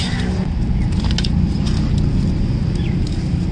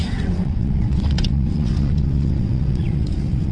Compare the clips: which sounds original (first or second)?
first